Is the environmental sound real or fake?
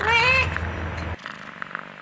real